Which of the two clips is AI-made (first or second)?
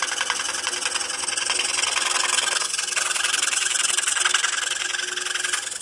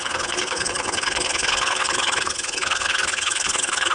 second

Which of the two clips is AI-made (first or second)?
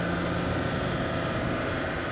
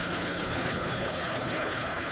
second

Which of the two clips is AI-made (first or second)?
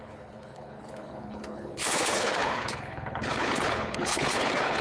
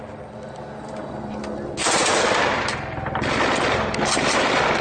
first